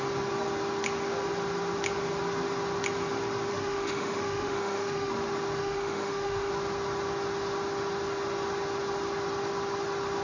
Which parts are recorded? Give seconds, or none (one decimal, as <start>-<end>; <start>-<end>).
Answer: 0.0-3.5; 5.1-5.6; 6.5-10.2